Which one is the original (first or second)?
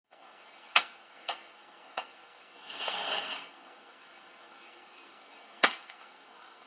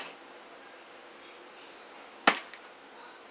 second